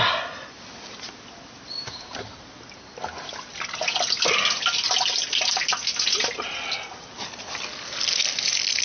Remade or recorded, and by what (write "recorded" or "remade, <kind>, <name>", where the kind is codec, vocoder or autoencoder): recorded